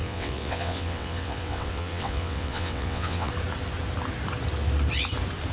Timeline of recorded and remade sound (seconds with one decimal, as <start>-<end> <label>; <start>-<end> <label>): 0.0-3.3 remade; 3.3-5.5 recorded